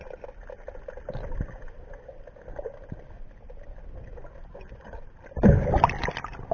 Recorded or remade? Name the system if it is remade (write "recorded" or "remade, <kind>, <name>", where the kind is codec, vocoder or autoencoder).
recorded